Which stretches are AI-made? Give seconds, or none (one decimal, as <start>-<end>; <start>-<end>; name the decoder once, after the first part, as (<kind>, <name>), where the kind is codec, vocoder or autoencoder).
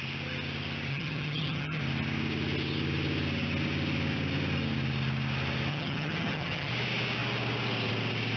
0.9-1.8 (vocoder, HiFi-GAN); 5.7-6.7